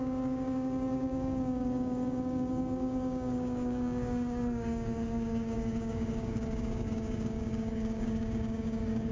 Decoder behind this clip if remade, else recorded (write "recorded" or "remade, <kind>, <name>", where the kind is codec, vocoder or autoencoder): remade, codec, DAC